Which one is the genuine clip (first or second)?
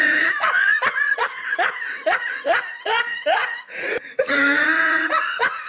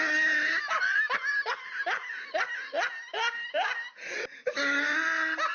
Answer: second